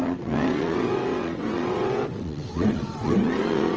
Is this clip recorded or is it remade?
remade